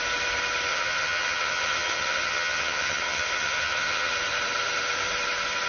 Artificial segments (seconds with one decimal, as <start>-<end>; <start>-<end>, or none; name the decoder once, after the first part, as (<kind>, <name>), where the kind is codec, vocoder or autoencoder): 0.7-4.1 (vocoder, HiFi-GAN)